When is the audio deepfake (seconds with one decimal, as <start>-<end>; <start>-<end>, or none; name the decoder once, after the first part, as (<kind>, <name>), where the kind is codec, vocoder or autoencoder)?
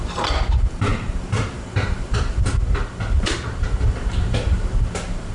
0.0-5.3 (vocoder, BigVGAN v2)